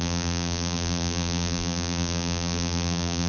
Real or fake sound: fake